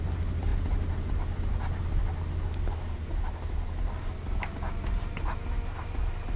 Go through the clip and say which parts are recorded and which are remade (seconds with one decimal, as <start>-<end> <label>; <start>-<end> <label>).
0.0-6.4 recorded